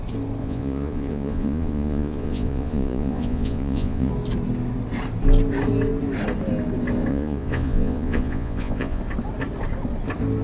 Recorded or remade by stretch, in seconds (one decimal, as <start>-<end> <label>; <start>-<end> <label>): 0.0-0.4 recorded; 0.4-4.1 remade; 4.1-7.1 recorded; 7.1-9.0 remade; 9.0-10.4 recorded